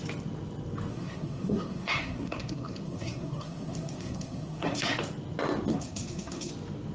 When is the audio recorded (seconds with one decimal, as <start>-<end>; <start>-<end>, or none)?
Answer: 0.0-0.9; 5.0-5.7; 6.5-6.9